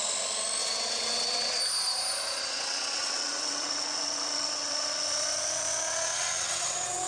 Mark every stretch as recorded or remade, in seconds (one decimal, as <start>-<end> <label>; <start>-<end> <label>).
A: 0.0-0.6 recorded; 0.6-1.6 remade; 1.6-2.4 recorded; 2.4-7.1 remade